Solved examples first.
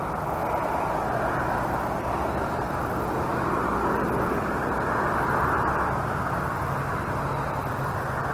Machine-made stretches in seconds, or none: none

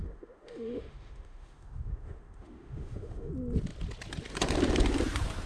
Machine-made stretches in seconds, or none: 0.0-3.3 (autoencoder, DAC-VAE)

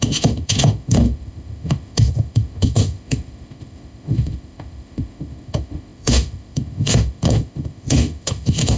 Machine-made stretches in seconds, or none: 0.0-8.8 (autoencoder, DAC-VAE)

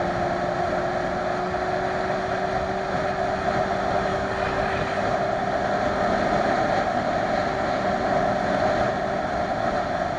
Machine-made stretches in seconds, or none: 4.1-5.0 (codec, DAC)

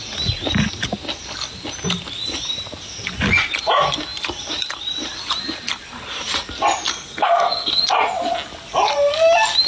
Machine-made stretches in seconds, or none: 6.9-7.8 (codec, SNAC)